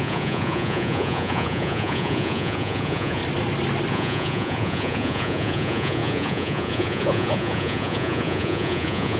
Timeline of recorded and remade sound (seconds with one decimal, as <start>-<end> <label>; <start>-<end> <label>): 0.0-3.2 remade; 3.2-3.9 recorded; 3.9-9.2 remade